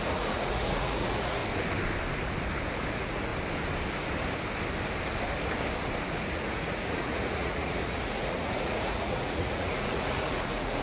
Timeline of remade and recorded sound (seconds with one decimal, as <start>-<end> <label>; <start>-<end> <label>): 0.0-1.4 remade; 1.4-2.9 recorded; 2.9-3.3 remade; 3.3-6.1 recorded; 6.1-10.8 remade